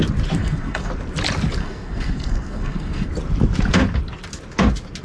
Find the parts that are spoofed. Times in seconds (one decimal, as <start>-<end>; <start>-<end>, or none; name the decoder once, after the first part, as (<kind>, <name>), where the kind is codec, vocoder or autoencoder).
0.4-0.9 (codec, SNAC); 1.6-3.1